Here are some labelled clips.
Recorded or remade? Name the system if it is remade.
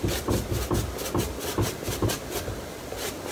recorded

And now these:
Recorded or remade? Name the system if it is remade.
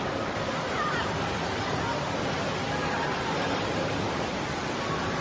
recorded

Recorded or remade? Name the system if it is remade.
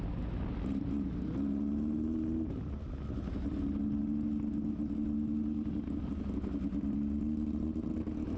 recorded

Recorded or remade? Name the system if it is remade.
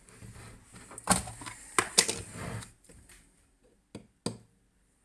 recorded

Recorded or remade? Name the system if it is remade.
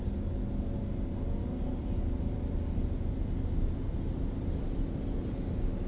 recorded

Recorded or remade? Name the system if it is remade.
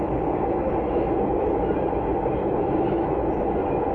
recorded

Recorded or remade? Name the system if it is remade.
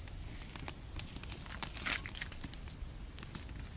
recorded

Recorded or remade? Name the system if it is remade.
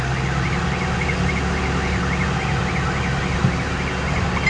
recorded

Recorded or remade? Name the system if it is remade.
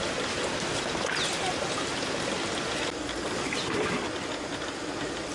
recorded